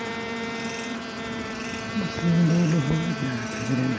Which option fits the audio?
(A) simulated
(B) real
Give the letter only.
B